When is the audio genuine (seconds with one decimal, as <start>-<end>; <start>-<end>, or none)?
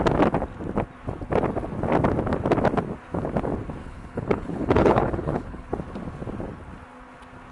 0.0-3.8; 5.7-7.5